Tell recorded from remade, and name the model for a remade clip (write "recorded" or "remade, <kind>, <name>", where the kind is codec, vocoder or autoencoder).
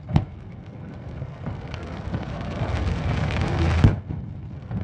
remade, codec, SNAC